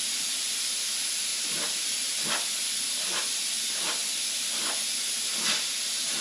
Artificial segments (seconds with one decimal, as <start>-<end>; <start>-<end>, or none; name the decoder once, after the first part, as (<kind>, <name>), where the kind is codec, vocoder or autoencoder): 4.0-4.7 (vocoder, BigVGAN v2)